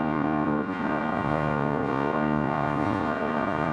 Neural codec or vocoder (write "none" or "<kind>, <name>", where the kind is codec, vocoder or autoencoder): vocoder, Vocos